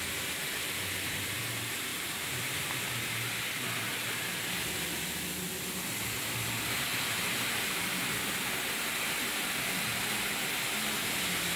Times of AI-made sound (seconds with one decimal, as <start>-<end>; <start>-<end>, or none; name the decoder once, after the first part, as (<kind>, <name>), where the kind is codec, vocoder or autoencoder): 1.9-3.3 (vocoder, BigVGAN v2); 3.9-5.2